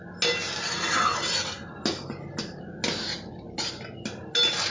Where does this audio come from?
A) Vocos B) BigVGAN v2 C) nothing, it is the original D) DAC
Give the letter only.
C